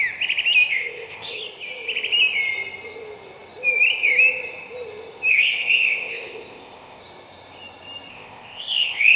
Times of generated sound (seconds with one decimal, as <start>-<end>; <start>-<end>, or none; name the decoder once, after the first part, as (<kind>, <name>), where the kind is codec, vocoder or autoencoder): 0.7-1.4 (codec, ZipCodec); 5.3-7.0; 8.1-9.2